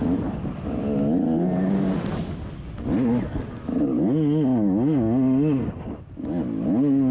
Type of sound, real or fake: real